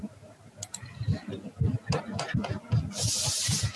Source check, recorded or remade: recorded